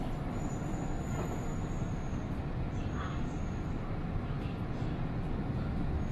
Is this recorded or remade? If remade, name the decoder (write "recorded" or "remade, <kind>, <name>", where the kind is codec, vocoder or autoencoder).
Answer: recorded